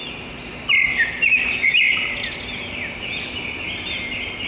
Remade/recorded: recorded